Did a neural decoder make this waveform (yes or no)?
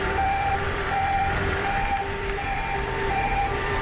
yes